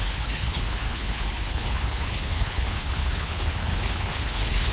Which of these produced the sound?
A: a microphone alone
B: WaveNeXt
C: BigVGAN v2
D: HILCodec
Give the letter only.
D